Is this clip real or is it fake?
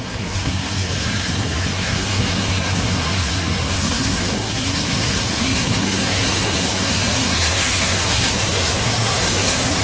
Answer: fake